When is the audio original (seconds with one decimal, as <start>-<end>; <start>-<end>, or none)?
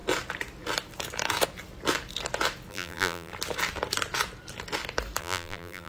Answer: 0.0-2.7; 3.3-5.2